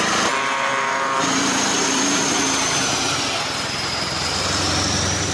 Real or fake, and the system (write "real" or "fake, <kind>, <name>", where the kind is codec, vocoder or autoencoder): fake, vocoder, BigVGAN v2